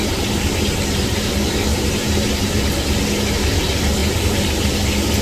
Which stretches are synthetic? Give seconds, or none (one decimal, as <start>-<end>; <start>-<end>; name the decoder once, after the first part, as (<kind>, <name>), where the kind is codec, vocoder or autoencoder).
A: 1.7-2.5 (vocoder, BigVGAN v2); 4.0-4.7